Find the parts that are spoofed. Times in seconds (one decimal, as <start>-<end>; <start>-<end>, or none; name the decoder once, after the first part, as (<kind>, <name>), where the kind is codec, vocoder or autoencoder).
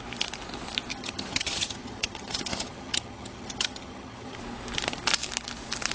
0.9-4.4 (vocoder, HiFi-GAN)